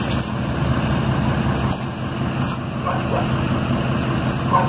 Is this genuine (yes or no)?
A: yes